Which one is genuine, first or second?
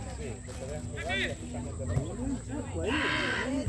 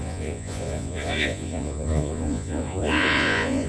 first